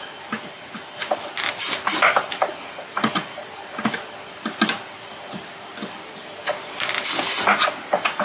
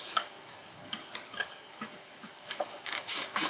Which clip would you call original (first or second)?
first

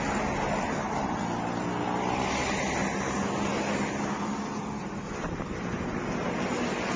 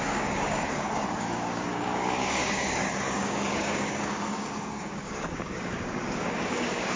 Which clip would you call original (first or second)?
first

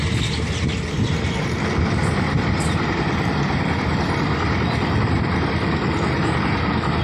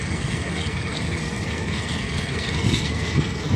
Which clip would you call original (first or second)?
first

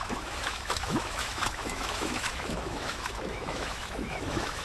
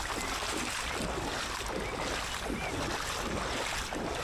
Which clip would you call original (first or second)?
second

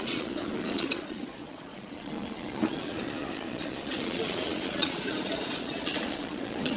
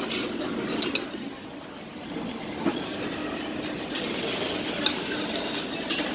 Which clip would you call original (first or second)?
second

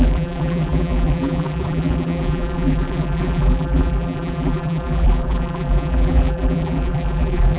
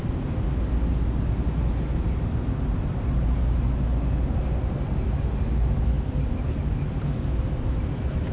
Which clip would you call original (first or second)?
second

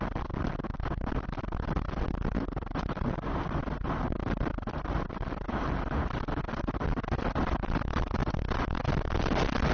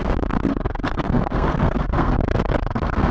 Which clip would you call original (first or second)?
first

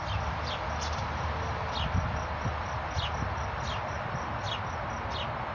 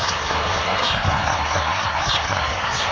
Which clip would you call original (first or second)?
first